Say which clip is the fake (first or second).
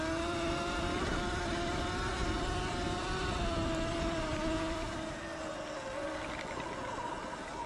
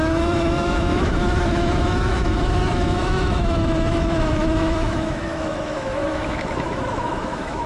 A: second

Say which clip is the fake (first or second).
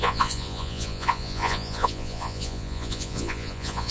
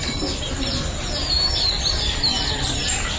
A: first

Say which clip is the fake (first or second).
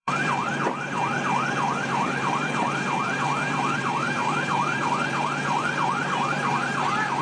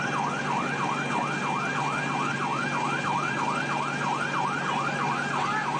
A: first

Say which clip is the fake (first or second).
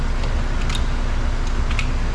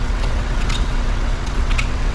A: second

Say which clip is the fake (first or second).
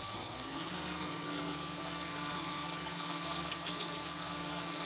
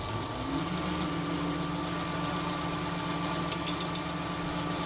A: first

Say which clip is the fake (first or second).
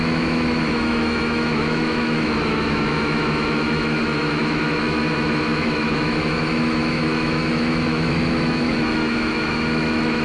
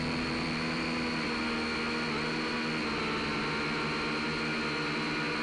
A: first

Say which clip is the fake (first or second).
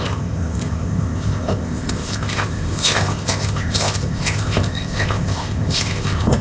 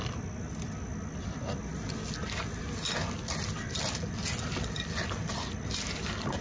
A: first